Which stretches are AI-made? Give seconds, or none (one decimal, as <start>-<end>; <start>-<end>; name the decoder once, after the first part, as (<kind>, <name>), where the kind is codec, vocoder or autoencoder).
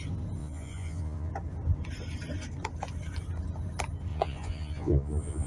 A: 0.4-1.3 (vocoder, Vocos); 4.1-5.5